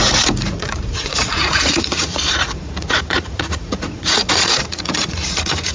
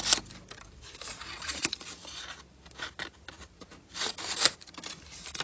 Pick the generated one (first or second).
first